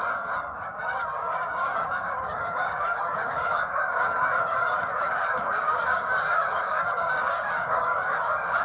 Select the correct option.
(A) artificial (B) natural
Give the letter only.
A